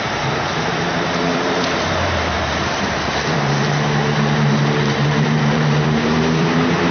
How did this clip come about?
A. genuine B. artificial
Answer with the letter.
B